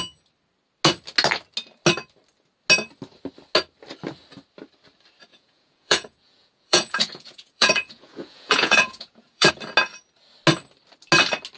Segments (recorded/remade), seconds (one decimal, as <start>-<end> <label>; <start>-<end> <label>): 0.0-5.3 recorded; 5.3-9.5 remade; 9.5-11.6 recorded